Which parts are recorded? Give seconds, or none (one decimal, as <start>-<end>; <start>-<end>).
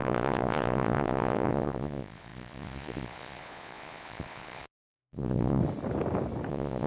5.6-6.5